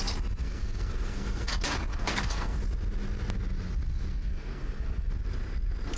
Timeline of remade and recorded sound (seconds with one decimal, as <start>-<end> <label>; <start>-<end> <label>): 0.0-0.4 recorded; 0.4-1.5 remade; 1.5-1.9 recorded; 1.9-2.6 remade; 2.6-4.1 recorded; 4.1-5.1 remade; 5.1-6.0 recorded